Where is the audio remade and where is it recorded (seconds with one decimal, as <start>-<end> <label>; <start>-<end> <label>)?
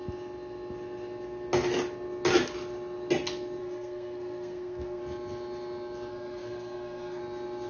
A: 0.0-3.6 recorded; 3.6-5.0 remade; 5.0-6.1 recorded; 6.1-7.2 remade; 7.2-7.7 recorded